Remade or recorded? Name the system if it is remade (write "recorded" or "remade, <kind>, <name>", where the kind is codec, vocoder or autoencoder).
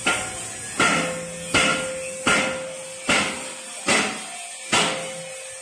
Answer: recorded